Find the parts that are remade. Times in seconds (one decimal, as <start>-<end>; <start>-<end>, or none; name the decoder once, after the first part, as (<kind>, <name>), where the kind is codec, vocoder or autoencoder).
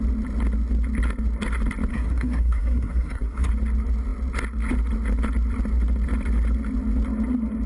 1.9-3.5 (codec, SNAC)